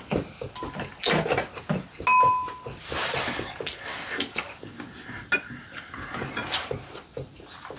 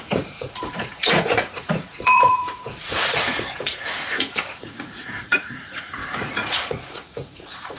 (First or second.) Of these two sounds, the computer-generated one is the second